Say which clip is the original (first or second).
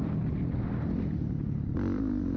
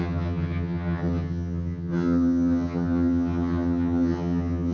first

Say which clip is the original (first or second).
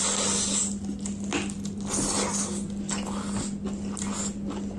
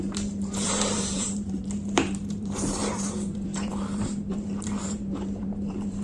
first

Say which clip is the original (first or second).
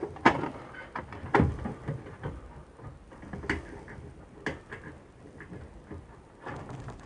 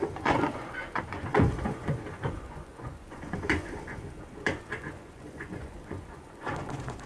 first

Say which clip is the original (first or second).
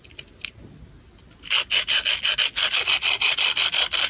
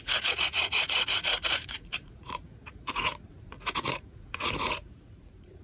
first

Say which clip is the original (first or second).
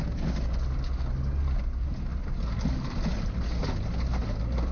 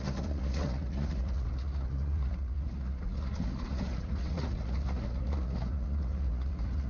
first